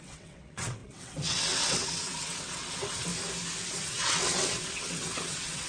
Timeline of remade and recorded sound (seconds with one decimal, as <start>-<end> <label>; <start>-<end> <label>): 0.0-3.1 remade; 3.1-3.7 recorded; 3.7-5.7 remade